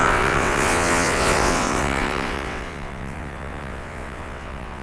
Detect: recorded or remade remade